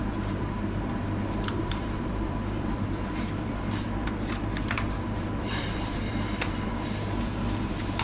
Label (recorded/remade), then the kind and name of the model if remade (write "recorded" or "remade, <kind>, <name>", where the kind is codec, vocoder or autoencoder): remade, vocoder, BigVGAN v2